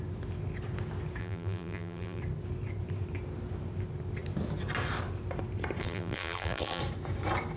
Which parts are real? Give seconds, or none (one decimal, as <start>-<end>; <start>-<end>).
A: 0.0-1.2; 2.2-5.8; 6.8-7.6